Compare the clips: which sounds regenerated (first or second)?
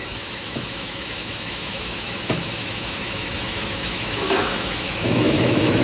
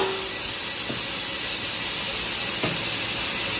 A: first